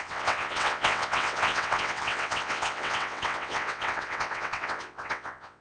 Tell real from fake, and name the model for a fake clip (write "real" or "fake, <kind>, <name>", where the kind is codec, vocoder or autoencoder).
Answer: fake, vocoder, WaveNeXt